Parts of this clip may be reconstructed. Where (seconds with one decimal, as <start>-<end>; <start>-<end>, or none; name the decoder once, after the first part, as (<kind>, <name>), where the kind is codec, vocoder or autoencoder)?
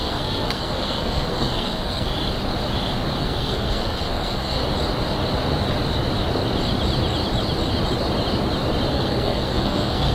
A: 0.0-2.1 (codec, SNAC); 3.2-4.6; 8.9-10.1